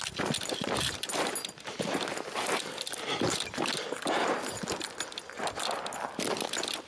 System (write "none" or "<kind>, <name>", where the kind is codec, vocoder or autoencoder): none